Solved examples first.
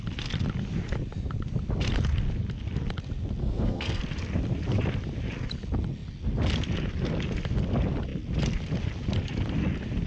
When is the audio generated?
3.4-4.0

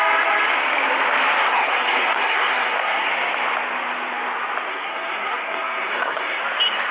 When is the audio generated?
1.4-3.1; 4.7-6.4